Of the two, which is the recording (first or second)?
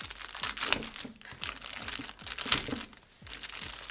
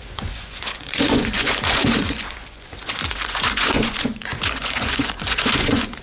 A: first